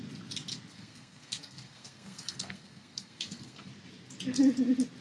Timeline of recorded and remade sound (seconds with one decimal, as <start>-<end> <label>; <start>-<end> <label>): 0.0-0.7 recorded; 0.7-3.7 remade; 3.7-5.0 recorded